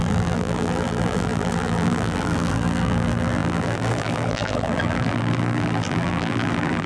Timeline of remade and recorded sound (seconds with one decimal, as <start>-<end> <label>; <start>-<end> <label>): 0.0-6.9 remade